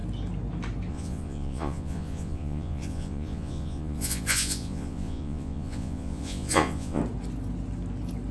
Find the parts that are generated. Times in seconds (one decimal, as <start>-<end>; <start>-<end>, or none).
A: 0.9-7.0